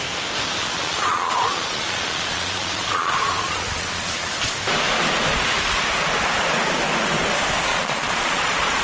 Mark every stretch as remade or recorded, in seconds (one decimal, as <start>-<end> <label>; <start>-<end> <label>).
0.0-0.6 recorded; 0.6-4.3 remade; 4.3-7.7 recorded; 7.7-8.8 remade